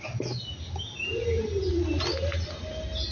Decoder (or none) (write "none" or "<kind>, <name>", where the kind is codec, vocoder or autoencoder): none